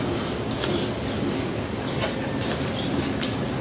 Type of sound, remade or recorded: recorded